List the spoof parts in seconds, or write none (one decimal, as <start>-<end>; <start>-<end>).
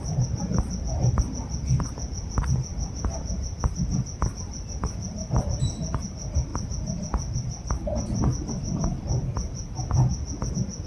none